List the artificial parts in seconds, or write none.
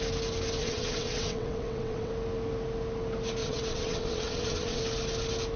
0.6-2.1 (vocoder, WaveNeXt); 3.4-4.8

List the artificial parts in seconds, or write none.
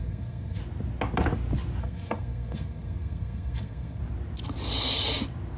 0.0-0.6 (codec, SNAC); 1.8-4.0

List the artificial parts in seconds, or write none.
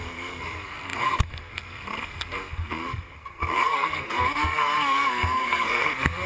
0.0-6.3 (codec, SNAC)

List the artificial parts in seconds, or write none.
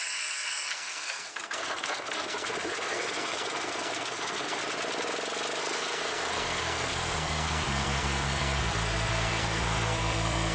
0.0-4.6 (codec, SNAC); 5.6-10.5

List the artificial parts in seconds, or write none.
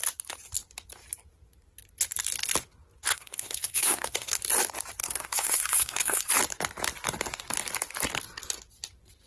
3.1-4.4 (codec, SNAC); 5.0-6.3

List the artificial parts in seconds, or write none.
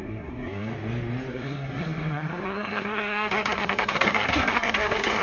0.0-0.7 (codec, SNAC); 1.3-5.2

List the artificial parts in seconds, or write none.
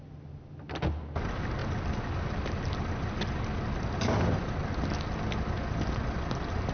none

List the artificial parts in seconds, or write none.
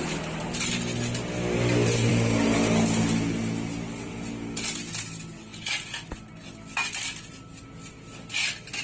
none